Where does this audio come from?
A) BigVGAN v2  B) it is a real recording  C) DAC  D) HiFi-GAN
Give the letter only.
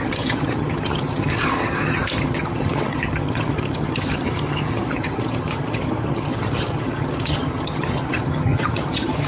D